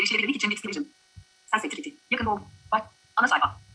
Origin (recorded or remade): recorded